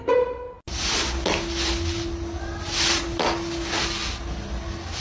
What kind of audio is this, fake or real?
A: real